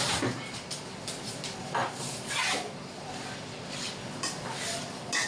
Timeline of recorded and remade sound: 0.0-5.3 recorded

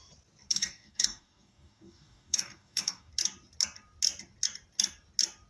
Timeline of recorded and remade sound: 0.0-0.5 recorded; 0.5-3.1 remade; 3.1-5.5 recorded

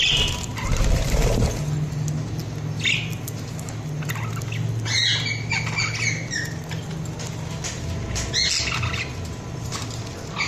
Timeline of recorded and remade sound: 0.0-10.5 recorded

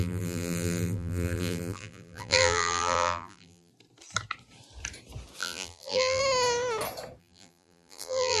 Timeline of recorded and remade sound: 0.0-3.7 remade; 3.7-5.4 recorded; 5.4-6.2 remade; 6.2-7.2 recorded; 7.2-8.4 remade

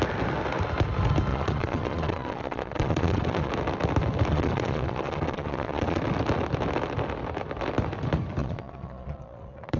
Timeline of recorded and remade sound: 0.0-1.3 recorded; 1.3-3.5 remade; 3.5-4.3 recorded; 4.3-6.0 remade; 6.0-8.4 recorded; 8.4-9.8 remade

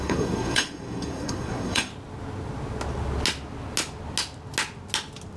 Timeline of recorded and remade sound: 0.0-1.9 remade; 1.9-5.4 recorded

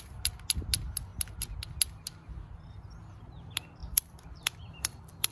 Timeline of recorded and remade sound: 0.0-3.8 recorded; 3.8-5.3 remade

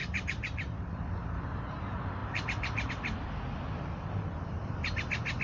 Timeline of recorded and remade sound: 0.0-1.0 remade; 1.0-2.2 recorded; 2.2-2.9 remade; 2.9-5.4 recorded